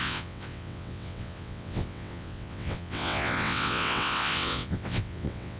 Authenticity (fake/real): fake